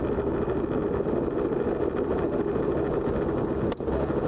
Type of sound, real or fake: real